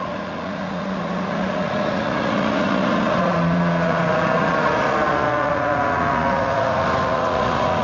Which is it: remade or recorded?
remade